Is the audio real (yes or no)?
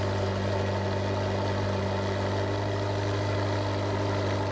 yes